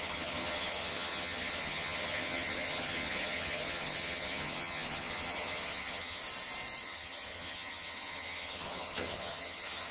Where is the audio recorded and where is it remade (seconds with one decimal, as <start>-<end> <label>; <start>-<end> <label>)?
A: 0.0-6.2 remade; 6.2-6.8 recorded; 6.8-9.9 remade

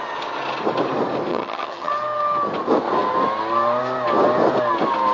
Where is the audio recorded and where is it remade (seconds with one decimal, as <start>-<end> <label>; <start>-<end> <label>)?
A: 0.0-1.3 recorded; 1.3-1.9 remade; 1.9-5.1 recorded